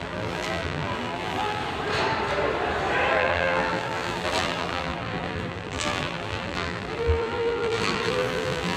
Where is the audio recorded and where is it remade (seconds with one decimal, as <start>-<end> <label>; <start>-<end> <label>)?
0.0-1.6 remade; 1.6-3.1 recorded; 3.1-8.8 remade